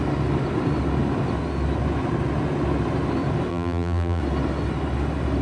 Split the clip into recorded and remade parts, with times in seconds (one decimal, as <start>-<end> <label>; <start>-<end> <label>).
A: 0.0-3.5 recorded; 3.5-4.2 remade; 4.2-5.4 recorded